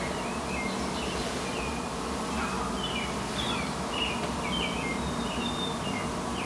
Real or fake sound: real